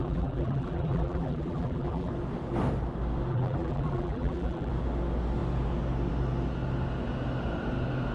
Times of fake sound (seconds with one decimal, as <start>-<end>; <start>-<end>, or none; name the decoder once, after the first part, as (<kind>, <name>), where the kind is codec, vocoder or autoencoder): 0.0-2.1 (vocoder, BigVGAN v2); 3.3-4.7